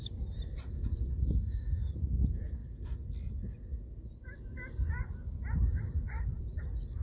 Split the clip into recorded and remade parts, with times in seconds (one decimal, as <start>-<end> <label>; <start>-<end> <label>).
0.0-1.2 recorded; 1.2-1.9 remade; 1.9-7.0 recorded